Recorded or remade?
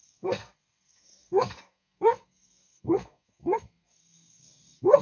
remade